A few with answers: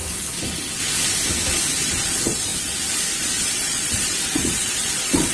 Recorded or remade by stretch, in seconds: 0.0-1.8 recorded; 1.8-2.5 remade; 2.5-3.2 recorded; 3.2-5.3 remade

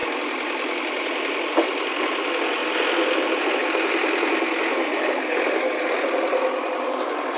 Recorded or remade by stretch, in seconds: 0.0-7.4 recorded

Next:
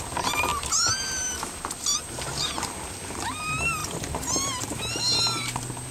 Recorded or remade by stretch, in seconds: 0.0-3.8 recorded; 3.8-4.8 remade; 4.8-5.9 recorded

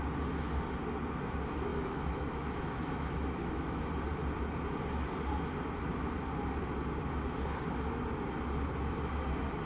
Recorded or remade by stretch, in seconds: 0.0-1.7 recorded; 1.7-3.8 remade; 3.8-9.7 recorded

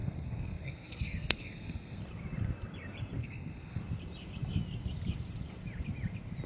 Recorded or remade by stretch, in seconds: 0.0-2.0 remade; 2.0-3.2 recorded; 3.2-3.8 remade; 3.8-6.5 recorded

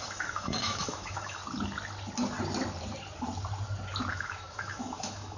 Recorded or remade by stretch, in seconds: 0.0-1.4 remade; 1.4-4.1 recorded; 4.1-5.4 remade

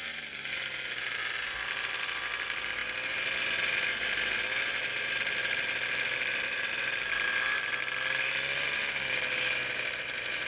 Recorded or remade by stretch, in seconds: 0.0-10.5 recorded

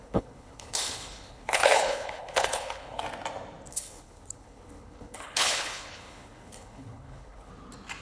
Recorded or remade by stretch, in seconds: 0.0-3.0 remade; 3.0-3.7 recorded; 3.7-7.5 remade; 7.5-8.0 recorded